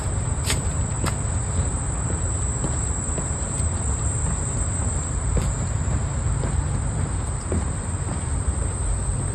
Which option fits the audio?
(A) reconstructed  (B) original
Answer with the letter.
A